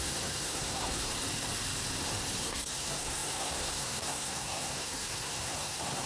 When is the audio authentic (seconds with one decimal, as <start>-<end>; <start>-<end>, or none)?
1.1-2.4